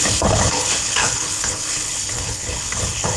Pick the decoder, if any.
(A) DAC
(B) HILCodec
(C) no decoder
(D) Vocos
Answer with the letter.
B